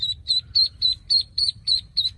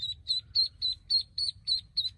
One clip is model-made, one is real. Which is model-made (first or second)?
first